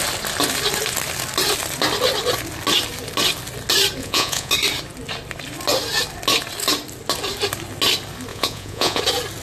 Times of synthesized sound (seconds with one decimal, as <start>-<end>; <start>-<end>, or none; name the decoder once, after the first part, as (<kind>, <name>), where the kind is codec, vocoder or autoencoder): 4.0-4.5 (vocoder, Vocos); 8.3-9.0